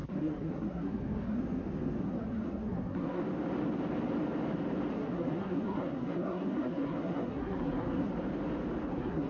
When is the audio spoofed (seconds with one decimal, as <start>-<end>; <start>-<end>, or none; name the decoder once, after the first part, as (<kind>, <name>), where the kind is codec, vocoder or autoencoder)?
0.0-1.4 (codec, SNAC); 2.0-3.2; 4.9-8.1; 8.9-9.3